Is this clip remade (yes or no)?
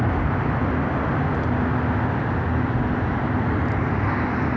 no